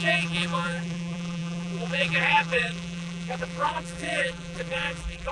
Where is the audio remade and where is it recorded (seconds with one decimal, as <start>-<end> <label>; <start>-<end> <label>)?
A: 0.0-5.3 remade